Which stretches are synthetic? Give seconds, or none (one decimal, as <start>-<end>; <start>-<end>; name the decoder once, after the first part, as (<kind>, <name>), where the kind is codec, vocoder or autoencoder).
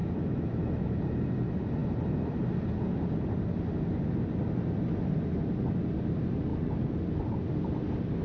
0.0-1.0 (autoencoder, DAC-VAE)